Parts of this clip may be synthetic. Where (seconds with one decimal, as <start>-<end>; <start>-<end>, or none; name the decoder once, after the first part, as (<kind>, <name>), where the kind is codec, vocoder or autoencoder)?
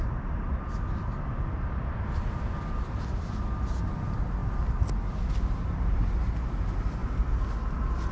none